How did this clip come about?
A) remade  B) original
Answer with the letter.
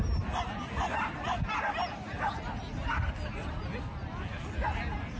B